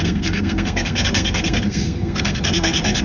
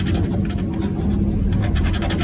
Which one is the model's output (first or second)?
first